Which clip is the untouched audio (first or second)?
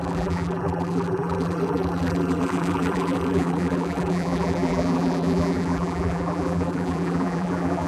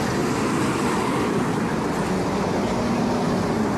second